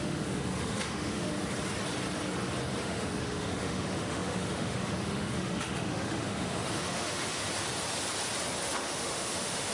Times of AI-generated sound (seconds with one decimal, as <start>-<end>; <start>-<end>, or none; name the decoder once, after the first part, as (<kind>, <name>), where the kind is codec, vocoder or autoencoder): 0.0-1.3 (autoencoder, DAC-VAE); 2.8-7.4; 8.6-9.7